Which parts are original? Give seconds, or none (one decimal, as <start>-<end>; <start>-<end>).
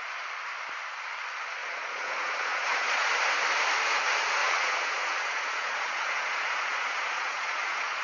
0.0-1.6; 3.1-4.4